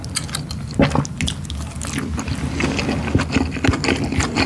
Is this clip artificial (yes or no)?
no